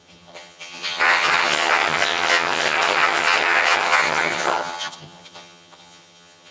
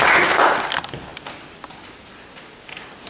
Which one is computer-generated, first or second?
first